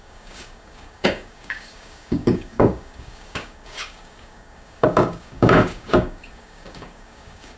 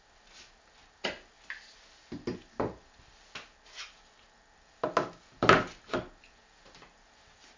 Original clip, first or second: second